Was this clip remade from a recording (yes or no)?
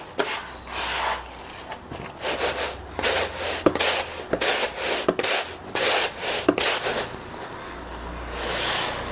no